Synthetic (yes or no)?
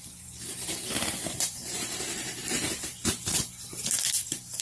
yes